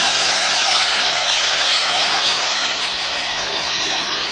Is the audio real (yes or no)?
no